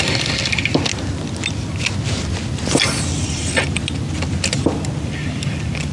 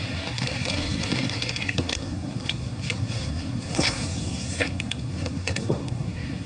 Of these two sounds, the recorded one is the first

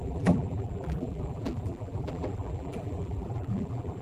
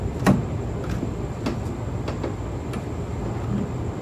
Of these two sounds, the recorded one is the second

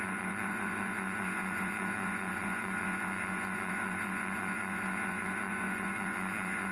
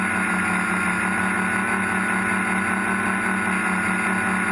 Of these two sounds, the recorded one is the second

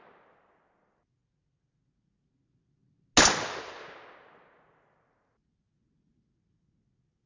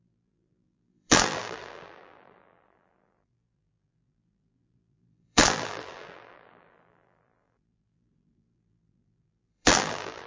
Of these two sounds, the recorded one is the first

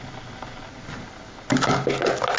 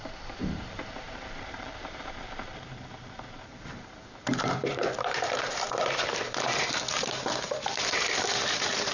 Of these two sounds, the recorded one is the first